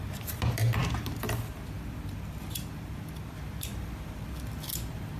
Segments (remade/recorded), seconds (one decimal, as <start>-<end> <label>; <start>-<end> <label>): 0.0-5.2 recorded